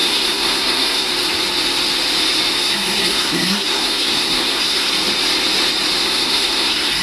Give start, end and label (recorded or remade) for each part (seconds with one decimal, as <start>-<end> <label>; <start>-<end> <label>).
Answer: 0.0-1.1 remade; 1.1-2.6 recorded; 2.6-4.9 remade; 4.9-6.0 recorded; 6.0-7.0 remade